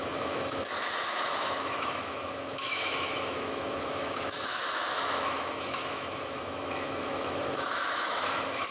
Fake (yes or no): yes